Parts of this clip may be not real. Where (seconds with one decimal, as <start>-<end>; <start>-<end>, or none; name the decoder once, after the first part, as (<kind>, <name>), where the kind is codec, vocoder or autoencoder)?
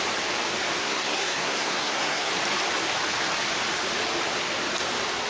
0.8-2.3 (codec, SNAC)